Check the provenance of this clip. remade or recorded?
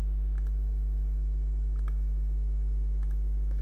remade